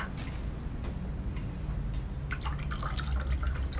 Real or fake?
real